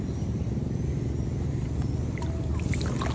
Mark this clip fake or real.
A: real